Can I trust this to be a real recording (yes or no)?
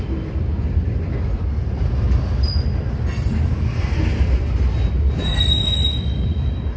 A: yes